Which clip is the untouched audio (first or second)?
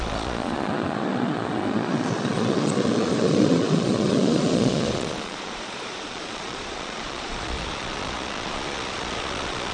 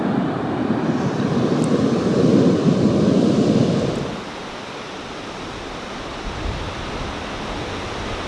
second